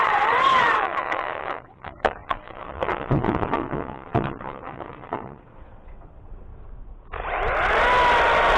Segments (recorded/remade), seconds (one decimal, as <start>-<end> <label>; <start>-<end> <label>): 0.0-6.5 remade; 6.5-8.6 recorded